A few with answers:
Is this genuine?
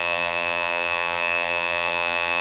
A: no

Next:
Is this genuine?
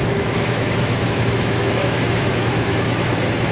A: no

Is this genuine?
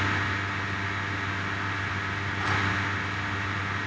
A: yes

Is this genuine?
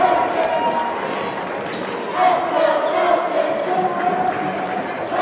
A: yes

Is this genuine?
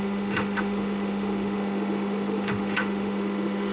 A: no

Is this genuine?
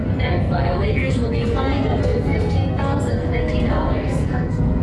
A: no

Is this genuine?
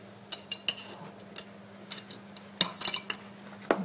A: yes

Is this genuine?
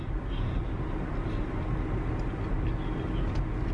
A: yes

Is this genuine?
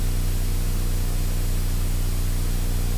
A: yes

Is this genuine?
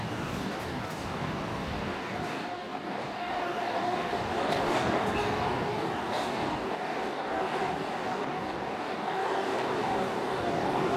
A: no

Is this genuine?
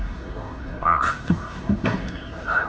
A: no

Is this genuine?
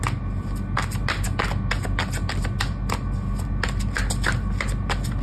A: yes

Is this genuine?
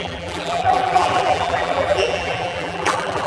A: no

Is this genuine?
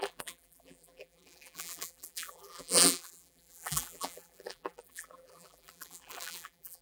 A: no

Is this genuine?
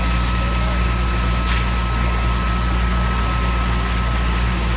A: yes